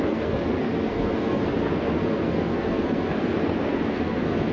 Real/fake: fake